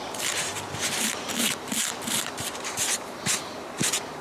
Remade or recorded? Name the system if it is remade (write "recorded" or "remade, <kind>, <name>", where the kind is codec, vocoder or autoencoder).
remade, vocoder, BigVGAN v2